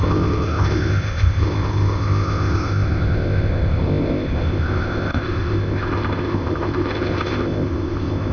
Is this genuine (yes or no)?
no